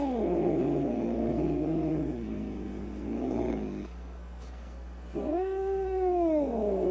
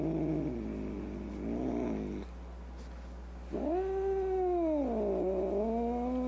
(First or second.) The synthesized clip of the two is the first